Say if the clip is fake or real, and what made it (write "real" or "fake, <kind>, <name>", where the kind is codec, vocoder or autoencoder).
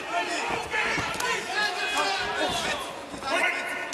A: real